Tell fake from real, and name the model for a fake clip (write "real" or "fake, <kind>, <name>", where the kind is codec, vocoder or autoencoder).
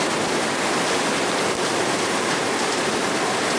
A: real